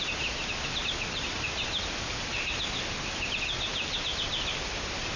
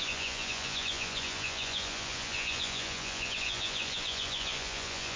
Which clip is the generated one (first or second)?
second